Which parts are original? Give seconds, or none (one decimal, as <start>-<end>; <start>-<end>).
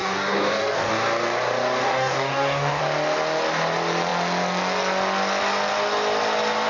0.9-1.8; 2.8-6.7